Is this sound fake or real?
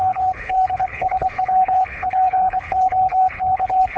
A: fake